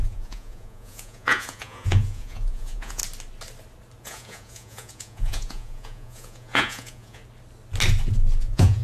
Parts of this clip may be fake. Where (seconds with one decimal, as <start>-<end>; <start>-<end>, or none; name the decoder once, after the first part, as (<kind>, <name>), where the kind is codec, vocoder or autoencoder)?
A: 0.0-3.0 (vocoder, Vocos); 4.0-7.2; 8.4-8.8